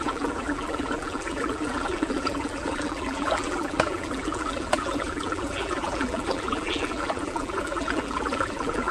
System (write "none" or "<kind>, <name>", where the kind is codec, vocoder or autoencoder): vocoder, BigVGAN v2